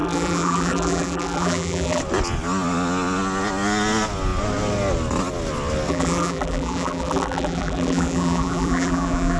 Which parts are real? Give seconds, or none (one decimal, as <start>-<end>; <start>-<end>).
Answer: 2.0-5.9